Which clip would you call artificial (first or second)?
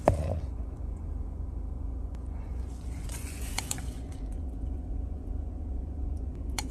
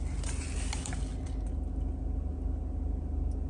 first